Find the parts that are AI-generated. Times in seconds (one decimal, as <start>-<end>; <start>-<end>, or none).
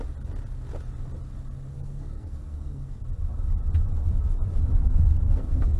1.7-3.0; 4.8-5.8